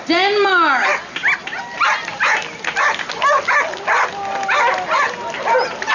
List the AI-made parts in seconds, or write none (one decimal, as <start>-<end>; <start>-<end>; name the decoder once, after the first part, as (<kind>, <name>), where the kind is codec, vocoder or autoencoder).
none